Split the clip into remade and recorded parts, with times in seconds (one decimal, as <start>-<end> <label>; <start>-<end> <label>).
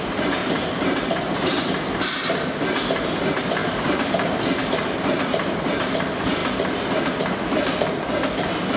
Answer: 0.0-0.4 recorded; 0.4-1.6 remade; 1.6-3.6 recorded; 3.6-4.5 remade; 4.5-8.8 recorded